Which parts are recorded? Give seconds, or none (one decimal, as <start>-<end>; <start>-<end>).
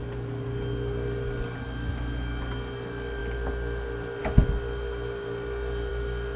0.0-6.4